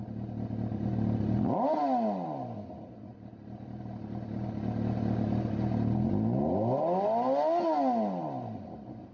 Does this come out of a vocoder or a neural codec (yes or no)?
no